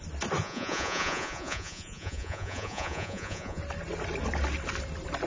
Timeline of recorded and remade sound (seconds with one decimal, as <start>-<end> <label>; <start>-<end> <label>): 0.0-0.4 recorded; 0.4-3.6 remade; 3.6-5.3 recorded